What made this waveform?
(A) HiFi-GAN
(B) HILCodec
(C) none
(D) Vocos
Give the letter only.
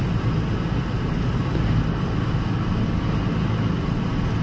C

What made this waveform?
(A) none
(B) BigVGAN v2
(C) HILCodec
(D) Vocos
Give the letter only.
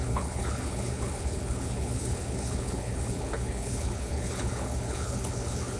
C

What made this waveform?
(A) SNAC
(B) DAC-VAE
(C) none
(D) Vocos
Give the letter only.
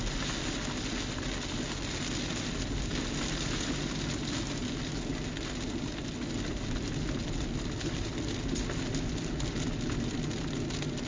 C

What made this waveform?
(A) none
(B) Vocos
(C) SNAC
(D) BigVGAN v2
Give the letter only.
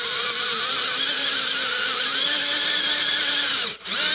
D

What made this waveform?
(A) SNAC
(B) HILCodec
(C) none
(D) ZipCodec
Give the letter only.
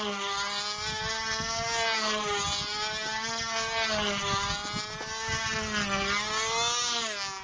C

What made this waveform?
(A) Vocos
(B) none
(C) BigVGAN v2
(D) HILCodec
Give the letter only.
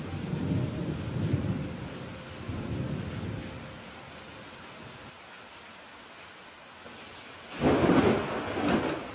B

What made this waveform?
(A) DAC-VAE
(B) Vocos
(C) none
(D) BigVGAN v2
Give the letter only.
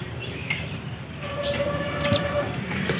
D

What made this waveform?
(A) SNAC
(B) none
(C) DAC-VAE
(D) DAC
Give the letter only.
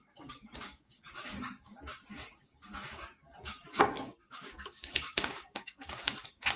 D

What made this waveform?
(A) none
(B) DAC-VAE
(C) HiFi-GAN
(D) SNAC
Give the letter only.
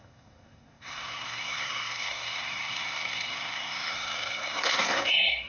D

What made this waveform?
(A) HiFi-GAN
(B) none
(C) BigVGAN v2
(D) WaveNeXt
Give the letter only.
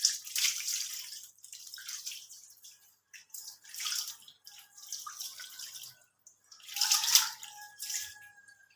C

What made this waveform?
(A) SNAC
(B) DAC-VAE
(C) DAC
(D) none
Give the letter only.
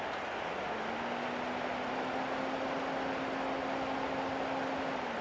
D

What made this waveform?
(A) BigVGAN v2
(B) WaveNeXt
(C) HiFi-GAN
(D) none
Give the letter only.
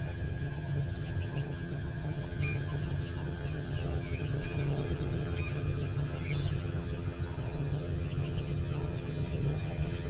C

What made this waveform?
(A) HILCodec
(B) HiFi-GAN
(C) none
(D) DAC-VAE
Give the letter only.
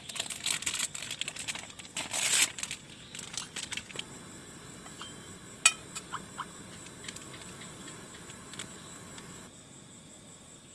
C